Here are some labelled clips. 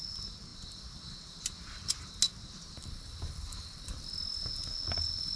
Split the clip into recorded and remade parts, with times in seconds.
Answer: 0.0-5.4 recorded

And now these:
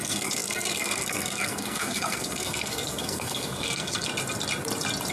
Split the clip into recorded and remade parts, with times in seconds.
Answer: 0.0-4.1 remade; 4.1-5.1 recorded

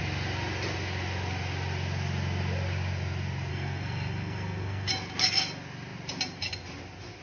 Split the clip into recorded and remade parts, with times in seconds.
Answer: 0.0-3.5 recorded; 3.5-4.9 remade; 4.9-7.2 recorded

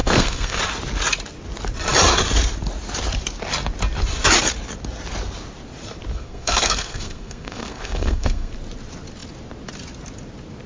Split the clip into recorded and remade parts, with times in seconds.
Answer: 0.0-0.6 remade; 0.6-6.1 recorded; 6.1-8.5 remade; 8.5-10.7 recorded

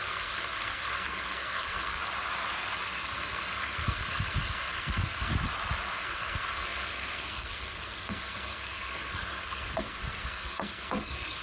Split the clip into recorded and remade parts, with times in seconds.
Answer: 0.0-2.0 remade; 2.0-2.8 recorded; 2.8-5.3 remade; 5.3-6.0 recorded; 6.0-11.4 remade

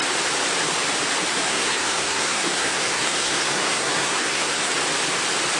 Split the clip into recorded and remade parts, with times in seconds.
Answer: 0.0-1.3 recorded; 1.3-4.7 remade; 4.7-5.6 recorded

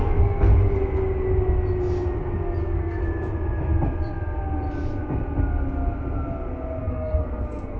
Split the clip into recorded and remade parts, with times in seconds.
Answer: 0.0-0.5 remade; 0.5-2.6 recorded; 2.6-3.0 remade; 3.0-6.8 recorded; 6.8-7.8 remade